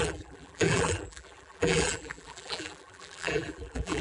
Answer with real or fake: fake